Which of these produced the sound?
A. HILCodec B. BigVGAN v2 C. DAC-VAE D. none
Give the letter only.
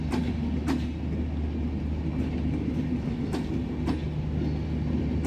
D